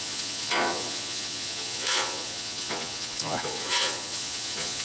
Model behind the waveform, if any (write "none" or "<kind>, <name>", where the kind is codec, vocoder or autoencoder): vocoder, Vocos